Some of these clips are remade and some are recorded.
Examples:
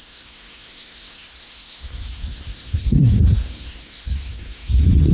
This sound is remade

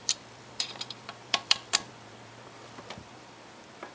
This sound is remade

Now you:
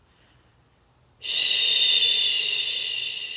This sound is remade